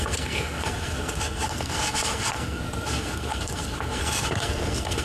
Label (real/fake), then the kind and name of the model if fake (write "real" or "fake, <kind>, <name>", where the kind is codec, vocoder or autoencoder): fake, codec, SNAC